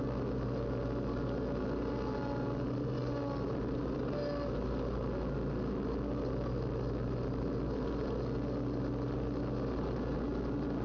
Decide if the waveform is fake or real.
real